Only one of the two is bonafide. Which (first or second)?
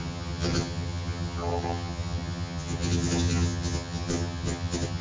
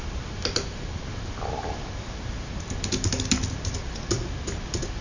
second